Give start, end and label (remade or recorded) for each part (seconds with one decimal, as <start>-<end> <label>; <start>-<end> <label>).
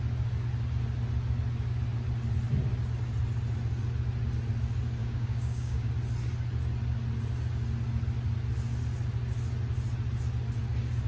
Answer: 0.0-5.0 recorded; 5.0-5.9 remade; 5.9-11.1 recorded